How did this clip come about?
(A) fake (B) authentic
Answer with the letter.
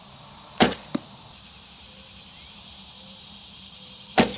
A